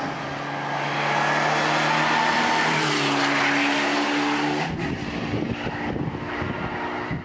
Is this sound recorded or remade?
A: recorded